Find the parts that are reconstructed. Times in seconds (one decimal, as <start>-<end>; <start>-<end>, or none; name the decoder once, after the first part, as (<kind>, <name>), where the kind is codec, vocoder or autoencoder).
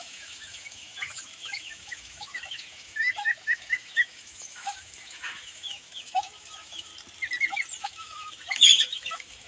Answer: 0.0-6.9 (autoencoder, DAC-VAE); 7.8-9.5